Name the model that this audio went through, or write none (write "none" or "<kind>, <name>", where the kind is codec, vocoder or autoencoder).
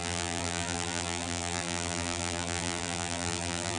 vocoder, BigVGAN v2